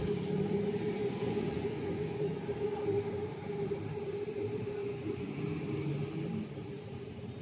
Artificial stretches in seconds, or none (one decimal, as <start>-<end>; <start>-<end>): 1.2-2.4; 4.8-5.4